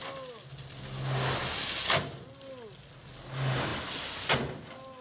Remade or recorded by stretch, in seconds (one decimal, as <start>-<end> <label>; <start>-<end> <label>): 0.0-5.0 recorded